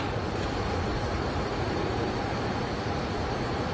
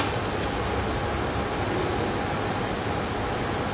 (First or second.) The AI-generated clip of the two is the first